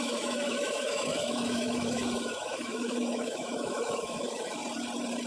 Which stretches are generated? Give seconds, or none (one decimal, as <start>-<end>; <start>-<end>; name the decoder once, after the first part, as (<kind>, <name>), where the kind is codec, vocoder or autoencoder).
0.0-4.6 (autoencoder, DAC-VAE)